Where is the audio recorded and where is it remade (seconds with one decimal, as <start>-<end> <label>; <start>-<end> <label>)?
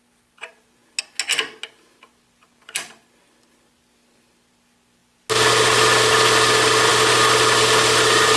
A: 0.0-8.4 recorded